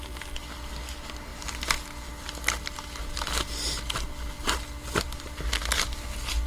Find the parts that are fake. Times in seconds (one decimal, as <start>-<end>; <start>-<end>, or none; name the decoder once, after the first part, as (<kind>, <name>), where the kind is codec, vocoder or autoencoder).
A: none